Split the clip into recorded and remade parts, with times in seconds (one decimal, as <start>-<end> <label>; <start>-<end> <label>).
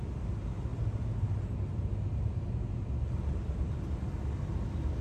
0.0-5.0 recorded